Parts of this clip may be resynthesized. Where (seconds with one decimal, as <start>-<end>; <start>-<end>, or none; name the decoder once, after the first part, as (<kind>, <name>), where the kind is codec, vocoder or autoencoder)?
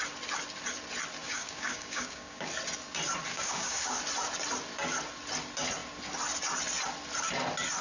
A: 1.2-2.5 (codec, DAC); 3.3-4.0